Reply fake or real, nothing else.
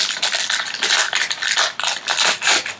real